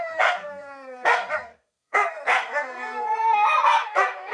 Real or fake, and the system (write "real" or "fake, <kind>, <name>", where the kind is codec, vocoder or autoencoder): fake, codec, SNAC